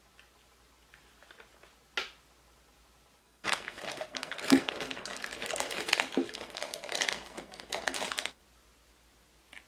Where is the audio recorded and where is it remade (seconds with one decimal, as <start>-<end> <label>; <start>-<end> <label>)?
0.0-3.2 recorded; 3.2-8.4 remade; 8.4-9.7 recorded